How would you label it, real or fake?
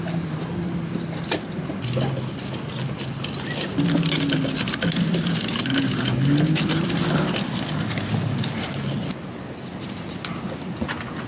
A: real